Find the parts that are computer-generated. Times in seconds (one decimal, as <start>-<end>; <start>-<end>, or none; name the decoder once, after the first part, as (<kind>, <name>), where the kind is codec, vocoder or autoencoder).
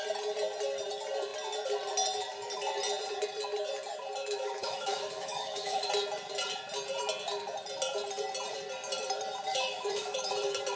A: 4.2-5.9 (autoencoder, DAC-VAE); 9.5-10.3